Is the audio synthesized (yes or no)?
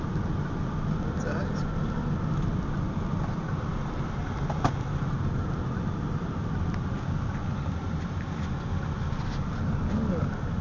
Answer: no